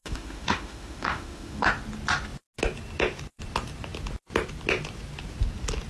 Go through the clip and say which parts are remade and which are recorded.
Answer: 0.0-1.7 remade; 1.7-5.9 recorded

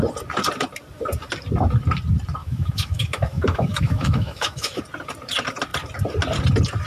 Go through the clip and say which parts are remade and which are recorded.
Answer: 0.0-2.4 recorded; 2.4-4.8 remade; 4.8-6.9 recorded

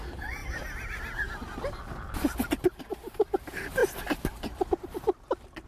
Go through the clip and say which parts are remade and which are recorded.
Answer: 0.0-5.7 recorded